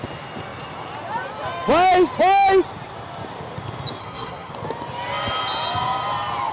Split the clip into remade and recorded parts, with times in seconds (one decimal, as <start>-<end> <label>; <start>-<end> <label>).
0.0-4.0 recorded; 4.0-4.5 remade; 4.5-6.5 recorded